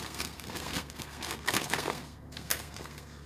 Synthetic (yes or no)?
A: yes